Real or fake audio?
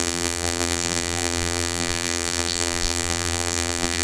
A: fake